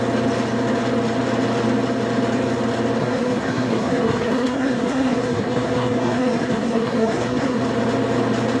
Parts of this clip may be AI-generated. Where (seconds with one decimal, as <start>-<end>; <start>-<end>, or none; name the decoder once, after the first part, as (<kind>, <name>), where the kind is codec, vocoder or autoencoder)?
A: 3.0-7.6 (codec, SNAC)